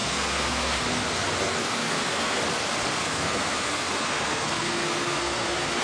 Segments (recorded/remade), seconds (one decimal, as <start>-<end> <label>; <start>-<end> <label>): 0.0-0.8 remade; 0.8-1.6 recorded; 1.6-2.4 remade; 2.4-3.0 recorded; 3.0-5.8 remade